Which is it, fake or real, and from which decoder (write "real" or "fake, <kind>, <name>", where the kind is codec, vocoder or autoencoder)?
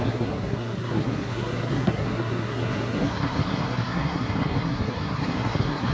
fake, codec, SNAC